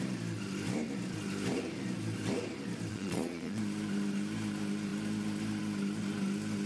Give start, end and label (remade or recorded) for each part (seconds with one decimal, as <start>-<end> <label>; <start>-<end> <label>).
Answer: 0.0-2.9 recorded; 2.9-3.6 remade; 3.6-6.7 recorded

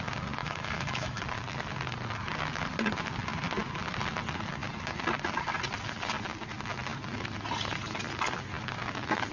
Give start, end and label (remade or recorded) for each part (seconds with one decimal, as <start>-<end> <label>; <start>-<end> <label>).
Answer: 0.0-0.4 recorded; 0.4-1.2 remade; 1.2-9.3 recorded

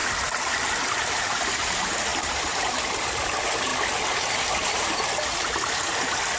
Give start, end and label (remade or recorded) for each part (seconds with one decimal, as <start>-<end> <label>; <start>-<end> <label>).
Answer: 0.0-1.2 remade; 1.2-2.1 recorded; 2.1-3.3 remade; 3.3-6.4 recorded

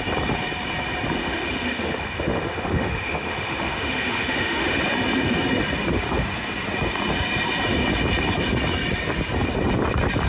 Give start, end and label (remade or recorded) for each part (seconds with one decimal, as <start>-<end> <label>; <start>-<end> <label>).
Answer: 0.0-1.2 recorded; 1.2-4.8 remade; 4.8-10.3 recorded